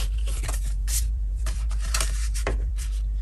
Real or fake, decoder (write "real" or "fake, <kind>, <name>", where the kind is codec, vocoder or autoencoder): fake, vocoder, BigVGAN v2